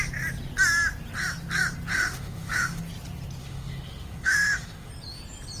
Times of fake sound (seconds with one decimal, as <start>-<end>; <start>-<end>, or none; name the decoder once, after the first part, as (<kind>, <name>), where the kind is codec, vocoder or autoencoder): 1.9-2.8 (autoencoder, DAC-VAE); 3.4-4.9